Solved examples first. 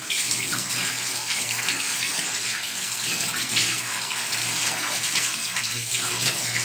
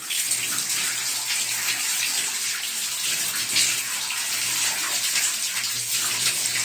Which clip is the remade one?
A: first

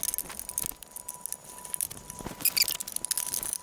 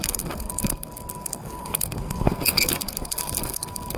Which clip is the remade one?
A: second